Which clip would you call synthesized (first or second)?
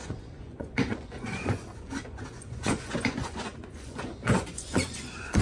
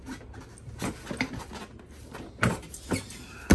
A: first